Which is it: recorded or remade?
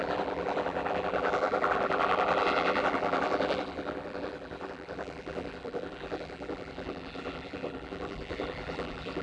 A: remade